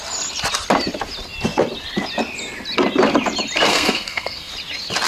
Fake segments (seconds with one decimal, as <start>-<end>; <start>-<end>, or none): 3.7-4.5